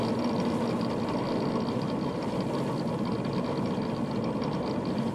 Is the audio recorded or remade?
recorded